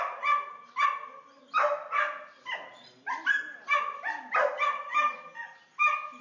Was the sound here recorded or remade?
recorded